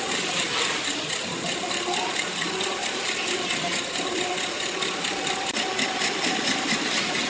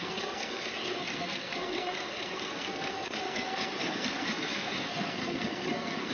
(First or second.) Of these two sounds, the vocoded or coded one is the second